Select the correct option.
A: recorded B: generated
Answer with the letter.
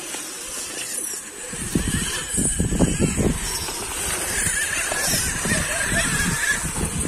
A